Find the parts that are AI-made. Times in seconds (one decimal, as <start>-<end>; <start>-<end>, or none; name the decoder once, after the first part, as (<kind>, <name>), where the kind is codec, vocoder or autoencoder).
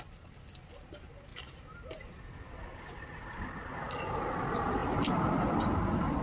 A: none